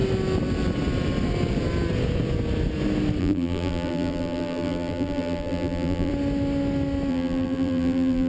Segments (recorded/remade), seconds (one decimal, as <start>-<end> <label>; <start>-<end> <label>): 0.0-3.2 recorded; 3.2-6.1 remade; 6.1-7.1 recorded; 7.1-8.3 remade